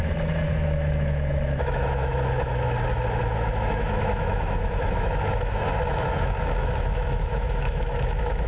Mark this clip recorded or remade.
remade